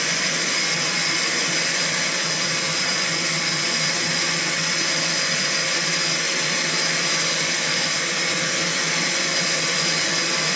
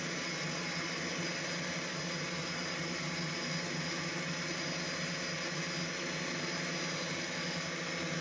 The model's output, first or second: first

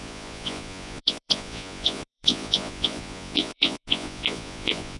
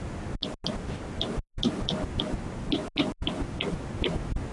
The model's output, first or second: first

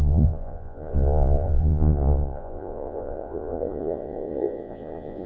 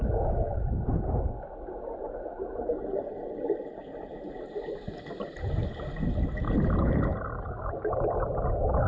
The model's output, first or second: first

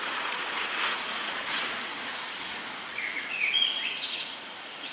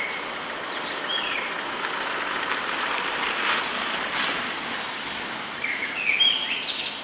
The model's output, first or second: first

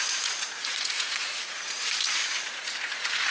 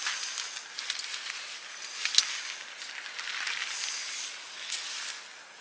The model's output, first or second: first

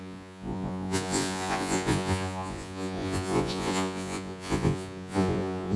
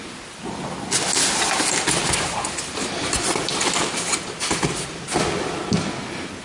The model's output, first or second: first